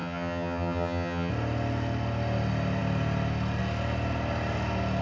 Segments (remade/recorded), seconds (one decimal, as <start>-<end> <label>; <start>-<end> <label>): 0.0-1.3 remade; 1.3-5.0 recorded